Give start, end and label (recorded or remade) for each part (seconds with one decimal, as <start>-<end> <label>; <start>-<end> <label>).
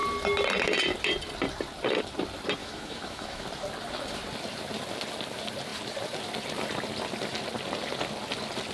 0.0-2.6 recorded; 2.6-3.4 remade; 3.4-8.7 recorded